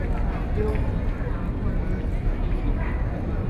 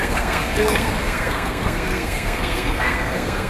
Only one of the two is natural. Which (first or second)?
first